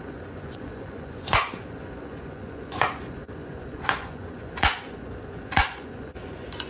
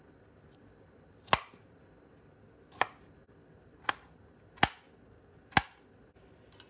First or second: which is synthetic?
first